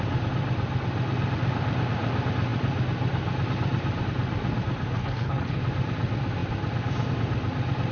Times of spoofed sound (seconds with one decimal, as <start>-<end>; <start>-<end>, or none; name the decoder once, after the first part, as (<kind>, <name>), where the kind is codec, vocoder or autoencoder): 4.9-5.6 (codec, HILCodec)